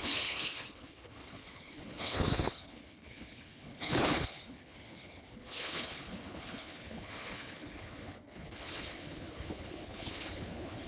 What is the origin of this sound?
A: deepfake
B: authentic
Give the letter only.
A